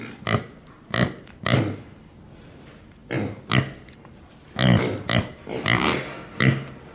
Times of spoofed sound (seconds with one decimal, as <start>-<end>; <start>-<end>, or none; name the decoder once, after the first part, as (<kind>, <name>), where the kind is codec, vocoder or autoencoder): none